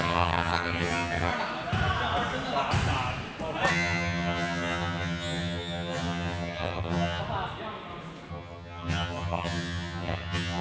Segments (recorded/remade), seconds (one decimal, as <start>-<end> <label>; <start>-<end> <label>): 0.0-1.3 remade; 1.3-3.7 recorded; 3.7-7.2 remade; 7.2-8.3 recorded; 8.3-10.6 remade